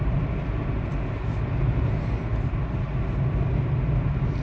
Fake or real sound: real